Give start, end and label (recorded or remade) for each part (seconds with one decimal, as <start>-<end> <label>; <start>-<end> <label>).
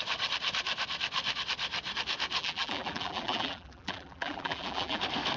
0.0-2.4 recorded; 2.4-5.0 remade; 5.0-5.4 recorded